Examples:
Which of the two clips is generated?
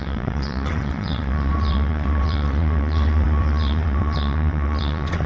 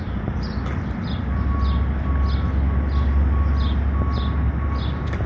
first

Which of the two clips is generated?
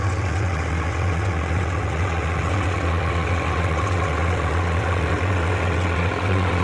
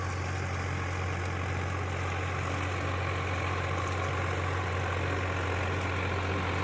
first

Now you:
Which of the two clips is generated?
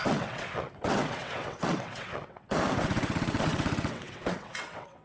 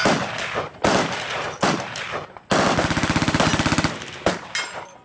first